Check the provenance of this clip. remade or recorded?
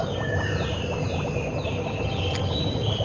recorded